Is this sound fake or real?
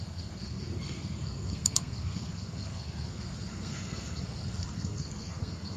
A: fake